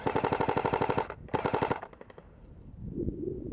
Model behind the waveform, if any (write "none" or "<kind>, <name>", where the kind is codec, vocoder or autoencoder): none